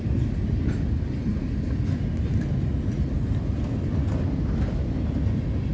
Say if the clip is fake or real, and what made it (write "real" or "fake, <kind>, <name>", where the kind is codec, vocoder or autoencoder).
real